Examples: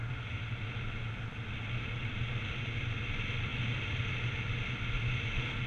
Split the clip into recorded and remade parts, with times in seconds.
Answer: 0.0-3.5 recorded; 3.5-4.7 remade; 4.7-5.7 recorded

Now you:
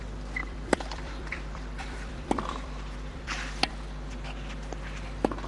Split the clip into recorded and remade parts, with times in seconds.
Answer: 0.0-0.4 recorded; 0.4-3.7 remade; 3.7-5.5 recorded

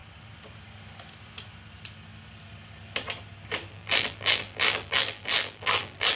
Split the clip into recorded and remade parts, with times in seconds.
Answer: 0.0-3.7 recorded; 3.7-6.2 remade

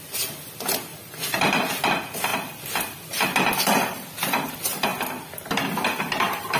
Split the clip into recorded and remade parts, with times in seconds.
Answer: 0.0-0.9 recorded; 0.9-1.7 remade; 1.7-2.3 recorded; 2.3-4.4 remade; 4.4-6.6 recorded

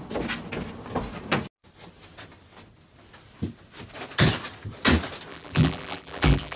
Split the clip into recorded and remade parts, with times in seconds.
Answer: 0.0-5.3 recorded; 5.3-6.6 remade

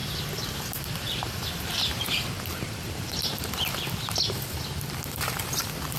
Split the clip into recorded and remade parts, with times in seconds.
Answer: 0.0-3.5 remade; 3.5-6.0 recorded